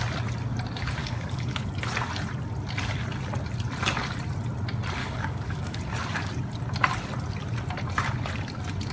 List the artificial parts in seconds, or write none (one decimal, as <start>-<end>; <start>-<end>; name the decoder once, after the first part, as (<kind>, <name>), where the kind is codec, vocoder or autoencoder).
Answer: 1.0-1.7 (codec, DAC); 5.0-5.8